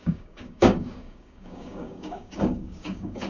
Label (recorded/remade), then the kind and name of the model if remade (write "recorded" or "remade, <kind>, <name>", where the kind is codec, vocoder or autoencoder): remade, codec, DAC